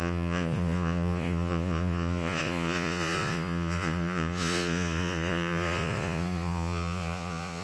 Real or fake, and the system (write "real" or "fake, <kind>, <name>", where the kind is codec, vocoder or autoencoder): fake, vocoder, Vocos